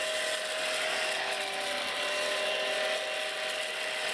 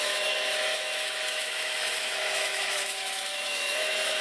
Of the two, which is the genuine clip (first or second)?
first